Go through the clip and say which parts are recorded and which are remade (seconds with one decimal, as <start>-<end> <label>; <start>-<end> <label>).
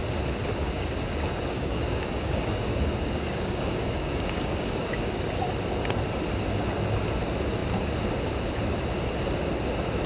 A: 0.0-0.6 recorded; 0.6-5.5 remade; 5.5-10.1 recorded